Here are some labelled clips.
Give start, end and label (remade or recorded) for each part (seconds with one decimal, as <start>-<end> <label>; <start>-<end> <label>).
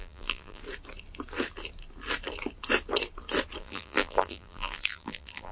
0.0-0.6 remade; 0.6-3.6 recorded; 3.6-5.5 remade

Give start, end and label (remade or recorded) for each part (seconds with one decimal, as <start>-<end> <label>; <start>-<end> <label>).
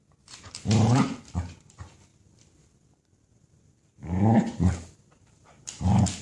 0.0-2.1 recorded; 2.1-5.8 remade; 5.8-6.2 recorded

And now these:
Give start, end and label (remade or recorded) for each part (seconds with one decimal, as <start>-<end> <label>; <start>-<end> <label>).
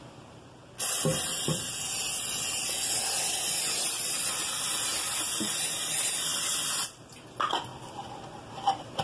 0.0-9.0 recorded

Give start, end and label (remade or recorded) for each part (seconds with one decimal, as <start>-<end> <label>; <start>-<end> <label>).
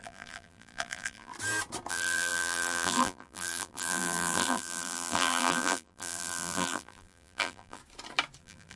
0.0-1.3 remade; 1.3-1.9 recorded; 1.9-7.8 remade; 7.8-8.4 recorded; 8.4-8.8 remade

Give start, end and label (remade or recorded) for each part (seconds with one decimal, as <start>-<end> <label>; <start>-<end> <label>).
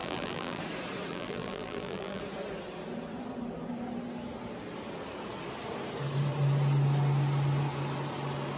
0.0-0.6 remade; 0.6-1.1 recorded; 1.1-2.2 remade; 2.2-8.6 recorded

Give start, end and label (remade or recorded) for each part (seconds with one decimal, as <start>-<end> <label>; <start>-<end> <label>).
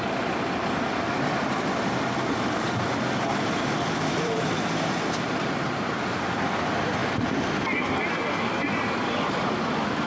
0.0-7.0 remade; 7.0-7.8 recorded; 7.8-10.1 remade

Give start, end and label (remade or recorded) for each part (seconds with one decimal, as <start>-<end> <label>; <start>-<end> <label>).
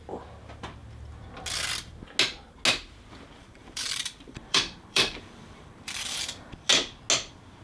0.0-3.4 recorded; 3.4-6.7 remade; 6.7-7.6 recorded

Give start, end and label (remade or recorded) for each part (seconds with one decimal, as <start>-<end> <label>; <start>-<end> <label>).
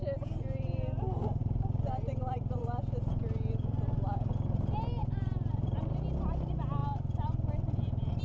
0.0-1.4 recorded; 1.4-2.6 remade; 2.6-5.0 recorded; 5.0-5.5 remade; 5.5-8.2 recorded